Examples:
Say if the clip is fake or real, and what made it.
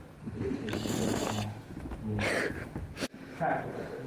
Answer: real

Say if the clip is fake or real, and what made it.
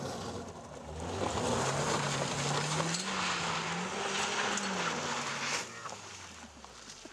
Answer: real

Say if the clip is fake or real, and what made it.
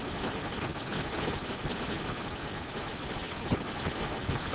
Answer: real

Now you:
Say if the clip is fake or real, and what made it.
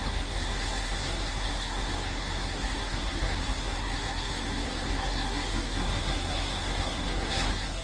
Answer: fake, codec, SNAC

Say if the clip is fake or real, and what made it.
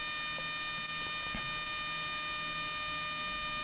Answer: real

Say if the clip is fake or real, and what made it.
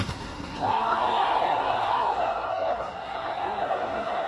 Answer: fake, codec, SNAC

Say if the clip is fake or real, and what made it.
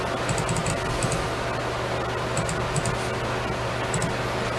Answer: real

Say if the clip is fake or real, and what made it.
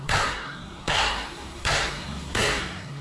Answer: fake, codec, SNAC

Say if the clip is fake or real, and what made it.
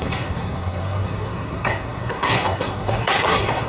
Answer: fake, codec, SNAC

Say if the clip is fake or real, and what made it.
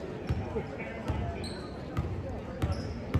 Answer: real